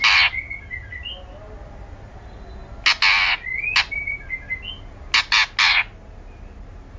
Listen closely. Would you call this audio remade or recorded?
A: recorded